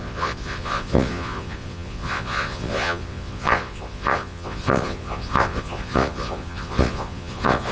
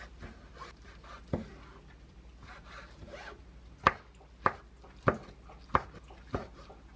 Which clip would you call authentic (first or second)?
second